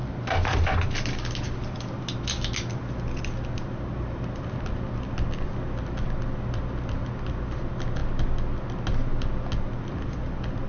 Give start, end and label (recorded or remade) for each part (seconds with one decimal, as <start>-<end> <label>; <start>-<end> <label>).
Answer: 0.0-10.7 recorded